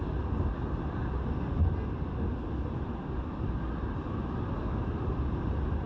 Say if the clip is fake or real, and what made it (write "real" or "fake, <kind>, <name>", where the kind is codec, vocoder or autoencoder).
real